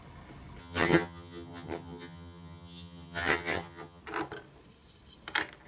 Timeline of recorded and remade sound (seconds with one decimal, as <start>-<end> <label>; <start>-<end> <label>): 0.0-0.6 recorded; 0.6-4.0 remade; 4.0-5.7 recorded